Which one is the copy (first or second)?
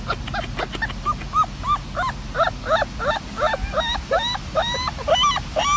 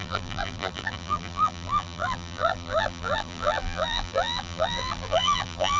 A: second